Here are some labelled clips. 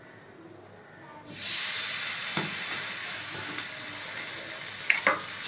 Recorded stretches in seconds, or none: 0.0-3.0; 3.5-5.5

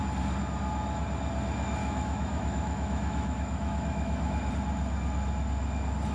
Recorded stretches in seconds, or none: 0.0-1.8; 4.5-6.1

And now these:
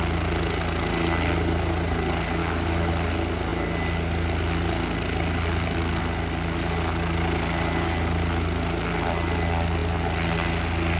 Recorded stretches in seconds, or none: 0.0-2.4; 2.9-11.0

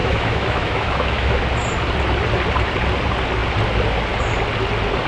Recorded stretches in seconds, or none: 1.4-5.1

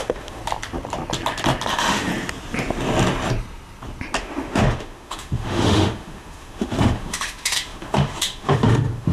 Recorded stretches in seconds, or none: 0.4-1.7; 2.1-4.2

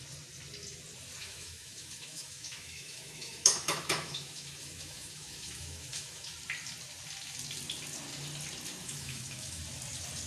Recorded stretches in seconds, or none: 0.0-1.2; 6.3-8.8; 9.6-10.3

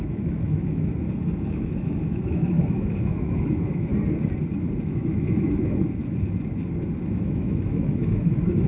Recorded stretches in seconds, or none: 0.9-1.5; 3.9-4.9; 6.0-7.1